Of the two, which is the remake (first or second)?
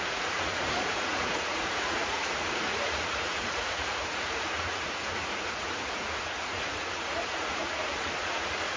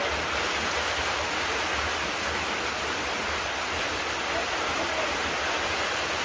first